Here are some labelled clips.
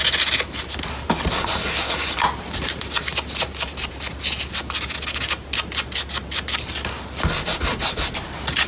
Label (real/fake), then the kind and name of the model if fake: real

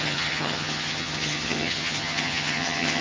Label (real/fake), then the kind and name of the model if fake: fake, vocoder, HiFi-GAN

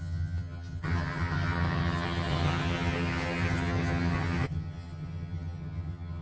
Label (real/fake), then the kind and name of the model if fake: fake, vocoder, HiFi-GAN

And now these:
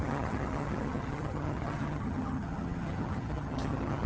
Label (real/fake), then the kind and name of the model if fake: fake, vocoder, HiFi-GAN